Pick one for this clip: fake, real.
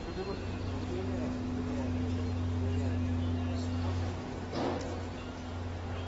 real